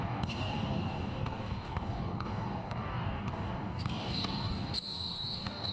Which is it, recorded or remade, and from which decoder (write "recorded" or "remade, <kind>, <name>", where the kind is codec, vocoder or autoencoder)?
remade, codec, DAC